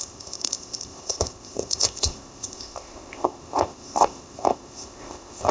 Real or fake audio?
fake